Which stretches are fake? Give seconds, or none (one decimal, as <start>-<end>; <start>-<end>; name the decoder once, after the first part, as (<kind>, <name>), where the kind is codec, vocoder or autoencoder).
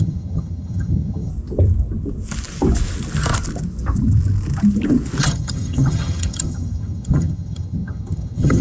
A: 0.0-1.3 (vocoder, HiFi-GAN); 5.2-8.6